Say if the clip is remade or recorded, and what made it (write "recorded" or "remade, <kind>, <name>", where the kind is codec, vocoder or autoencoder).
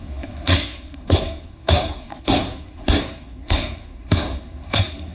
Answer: remade, codec, SNAC